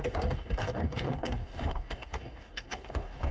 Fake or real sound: fake